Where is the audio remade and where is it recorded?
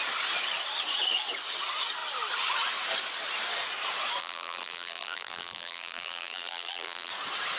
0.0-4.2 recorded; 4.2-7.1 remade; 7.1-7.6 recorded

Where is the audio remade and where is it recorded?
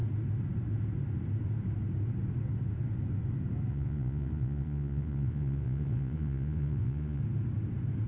0.0-3.7 recorded; 3.7-7.2 remade; 7.2-8.1 recorded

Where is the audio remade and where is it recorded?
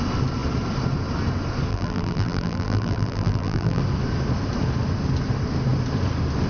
0.0-1.7 recorded; 1.7-3.8 remade; 3.8-6.5 recorded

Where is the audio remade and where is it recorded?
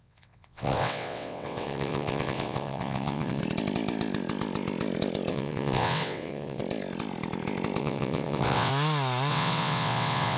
0.0-3.4 remade; 3.4-5.3 recorded; 5.3-6.6 remade; 6.6-7.8 recorded; 7.8-8.7 remade; 8.7-9.3 recorded; 9.3-10.4 remade